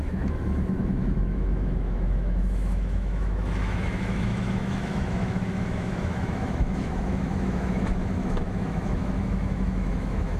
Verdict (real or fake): fake